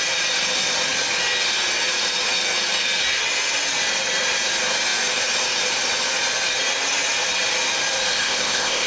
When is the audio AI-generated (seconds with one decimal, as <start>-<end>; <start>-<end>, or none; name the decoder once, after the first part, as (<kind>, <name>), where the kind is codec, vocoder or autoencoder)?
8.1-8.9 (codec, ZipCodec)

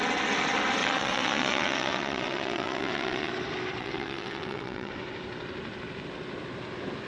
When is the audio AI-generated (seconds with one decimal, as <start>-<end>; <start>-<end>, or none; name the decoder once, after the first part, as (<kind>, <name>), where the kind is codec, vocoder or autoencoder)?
0.8-3.3 (vocoder, WaveNeXt); 3.8-4.9

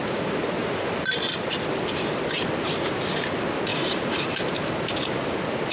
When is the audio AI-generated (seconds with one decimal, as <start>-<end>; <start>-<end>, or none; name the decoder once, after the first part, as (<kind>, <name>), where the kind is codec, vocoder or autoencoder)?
3.7-5.3 (vocoder, BigVGAN v2)